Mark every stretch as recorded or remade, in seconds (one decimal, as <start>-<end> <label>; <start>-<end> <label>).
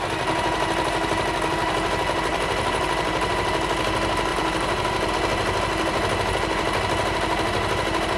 0.0-2.3 recorded; 2.3-3.3 remade; 3.3-4.3 recorded; 4.3-5.1 remade; 5.1-8.2 recorded